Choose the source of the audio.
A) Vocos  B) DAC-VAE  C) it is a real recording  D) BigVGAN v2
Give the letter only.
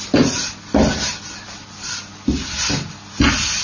C